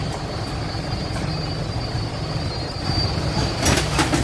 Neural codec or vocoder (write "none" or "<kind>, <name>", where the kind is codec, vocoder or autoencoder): vocoder, BigVGAN v2